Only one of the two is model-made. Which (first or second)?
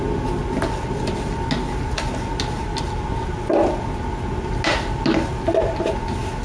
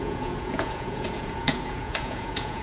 second